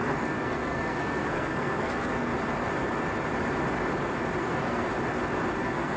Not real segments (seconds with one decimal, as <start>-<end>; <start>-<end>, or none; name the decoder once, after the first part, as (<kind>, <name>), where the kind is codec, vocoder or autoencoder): 0.0-2.3 (codec, SNAC); 4.4-4.9; 5.6-6.0

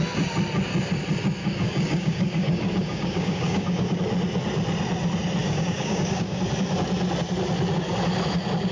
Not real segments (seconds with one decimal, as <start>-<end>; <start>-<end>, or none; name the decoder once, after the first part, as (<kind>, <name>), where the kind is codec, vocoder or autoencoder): 1.4-4.0 (codec, DAC); 5.4-6.4